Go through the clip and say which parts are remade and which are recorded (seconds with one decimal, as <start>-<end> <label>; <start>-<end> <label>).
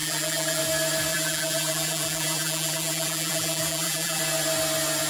0.0-0.6 remade; 0.6-1.1 recorded; 1.1-4.2 remade; 4.2-5.1 recorded